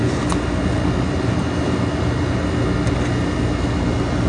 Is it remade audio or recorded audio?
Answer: recorded